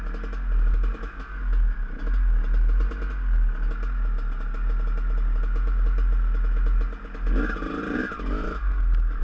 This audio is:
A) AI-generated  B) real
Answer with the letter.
B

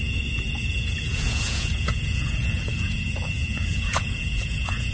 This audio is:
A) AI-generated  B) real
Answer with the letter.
A